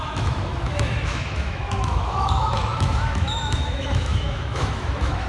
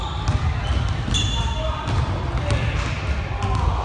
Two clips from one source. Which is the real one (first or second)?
second